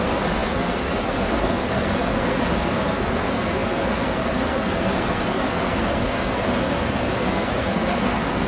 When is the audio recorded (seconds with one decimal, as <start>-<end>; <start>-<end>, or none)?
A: none